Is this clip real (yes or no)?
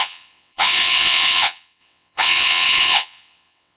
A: no